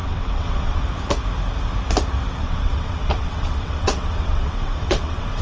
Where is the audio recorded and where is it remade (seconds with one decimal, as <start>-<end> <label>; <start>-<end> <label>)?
0.0-0.8 remade; 0.8-2.4 recorded; 2.4-5.4 remade